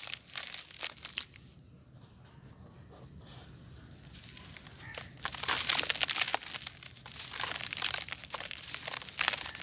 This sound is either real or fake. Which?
real